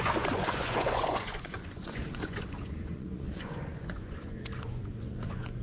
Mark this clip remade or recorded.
remade